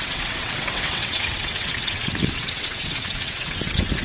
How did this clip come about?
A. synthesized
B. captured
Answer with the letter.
A